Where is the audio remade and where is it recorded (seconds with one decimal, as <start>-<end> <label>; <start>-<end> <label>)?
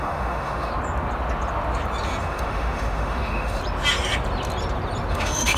0.0-0.7 remade; 0.7-2.2 recorded; 2.2-3.6 remade; 3.6-5.1 recorded; 5.1-5.6 remade